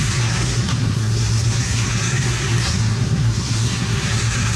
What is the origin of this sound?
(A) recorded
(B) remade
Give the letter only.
B